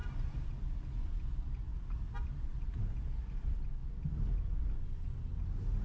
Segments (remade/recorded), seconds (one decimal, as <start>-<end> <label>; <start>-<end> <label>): 0.0-0.5 remade; 0.5-1.7 recorded; 1.7-3.2 remade; 3.2-5.8 recorded